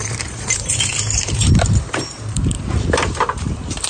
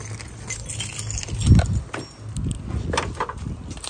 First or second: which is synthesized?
first